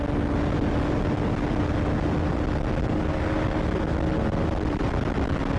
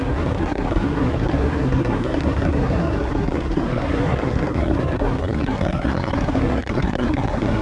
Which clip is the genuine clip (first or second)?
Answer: first